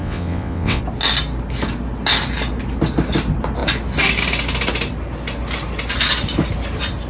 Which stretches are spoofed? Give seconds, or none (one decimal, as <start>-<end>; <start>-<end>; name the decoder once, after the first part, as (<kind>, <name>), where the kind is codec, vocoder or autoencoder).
0.0-0.8 (vocoder, WaveNeXt)